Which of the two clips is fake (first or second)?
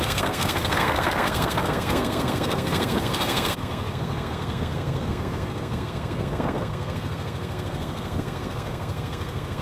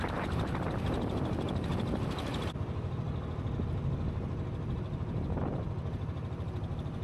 first